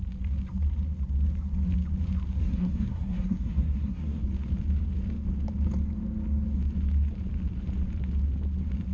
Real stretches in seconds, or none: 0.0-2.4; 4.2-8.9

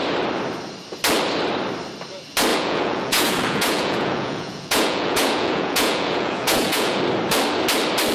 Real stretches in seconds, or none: 0.0-2.5; 7.0-8.1

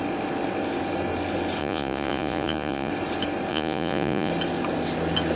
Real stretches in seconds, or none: 0.0-1.6; 2.9-3.5; 4.3-5.4

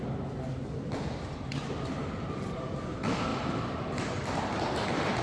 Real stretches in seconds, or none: 0.0-0.5; 1.5-3.3; 4.6-5.2